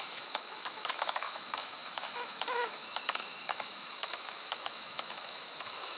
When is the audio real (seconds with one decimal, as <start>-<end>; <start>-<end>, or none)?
none